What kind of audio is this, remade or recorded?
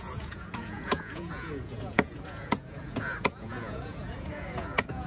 remade